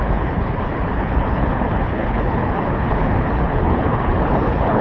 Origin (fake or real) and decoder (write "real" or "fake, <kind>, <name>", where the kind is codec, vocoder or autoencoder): fake, codec, HILCodec